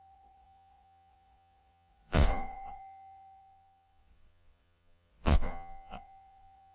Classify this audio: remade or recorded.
remade